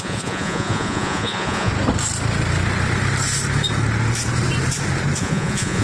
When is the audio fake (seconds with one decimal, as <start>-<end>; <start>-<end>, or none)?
0.0-1.7; 5.2-5.8